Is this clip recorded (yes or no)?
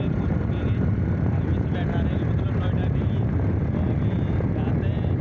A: yes